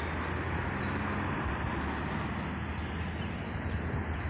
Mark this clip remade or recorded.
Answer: recorded